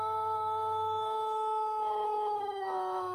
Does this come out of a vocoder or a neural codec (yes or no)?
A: yes